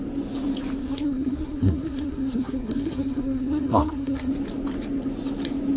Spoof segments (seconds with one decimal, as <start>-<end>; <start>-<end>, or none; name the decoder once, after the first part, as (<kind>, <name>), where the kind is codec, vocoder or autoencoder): 0.8-4.3 (codec, SNAC)